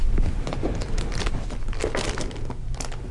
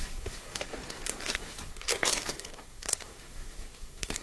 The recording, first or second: first